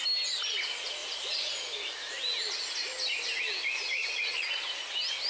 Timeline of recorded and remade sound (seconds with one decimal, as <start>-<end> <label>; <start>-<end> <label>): 0.0-5.3 recorded